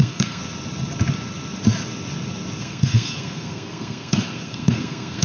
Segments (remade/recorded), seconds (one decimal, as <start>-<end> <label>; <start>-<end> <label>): 0.0-0.4 remade; 0.4-2.6 recorded; 2.6-5.2 remade